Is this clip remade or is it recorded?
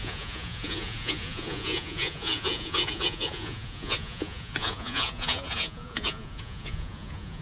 remade